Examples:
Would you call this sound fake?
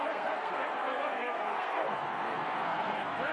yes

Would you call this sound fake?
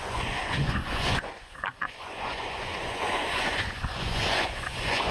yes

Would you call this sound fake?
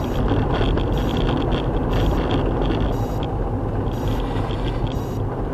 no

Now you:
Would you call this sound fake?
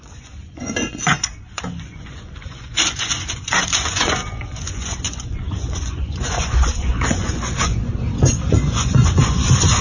yes